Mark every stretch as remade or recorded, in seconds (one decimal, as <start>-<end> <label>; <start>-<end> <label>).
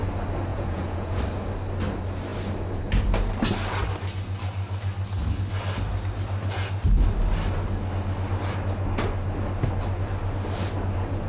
0.0-0.5 recorded; 0.5-1.2 remade; 1.2-11.3 recorded